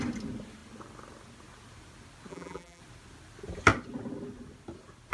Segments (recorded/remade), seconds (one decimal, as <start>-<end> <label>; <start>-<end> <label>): 0.0-2.3 recorded; 2.3-2.8 remade; 2.8-5.1 recorded

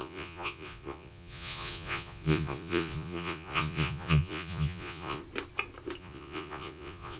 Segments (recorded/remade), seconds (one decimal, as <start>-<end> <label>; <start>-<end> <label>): 0.0-5.2 remade; 5.2-6.0 recorded; 6.0-7.2 remade

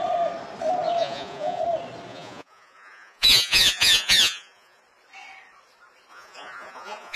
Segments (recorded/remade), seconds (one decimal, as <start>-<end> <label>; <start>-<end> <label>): 0.0-1.0 recorded; 1.0-1.6 remade; 1.6-2.1 recorded; 2.1-4.8 remade; 4.8-6.1 recorded; 6.1-7.2 remade

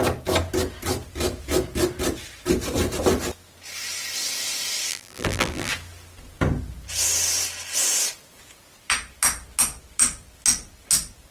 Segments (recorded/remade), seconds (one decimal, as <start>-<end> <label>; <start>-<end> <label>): 0.0-4.9 recorded; 4.9-5.7 remade; 5.7-11.3 recorded

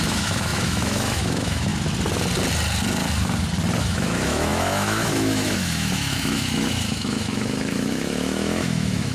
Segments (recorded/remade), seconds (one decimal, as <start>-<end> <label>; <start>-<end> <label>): 0.0-1.7 remade; 1.7-3.8 recorded; 3.8-9.1 remade

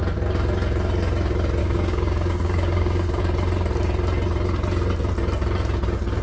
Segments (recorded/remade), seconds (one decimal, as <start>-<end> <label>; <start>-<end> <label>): 0.0-1.6 recorded; 1.6-3.2 remade; 3.2-6.2 recorded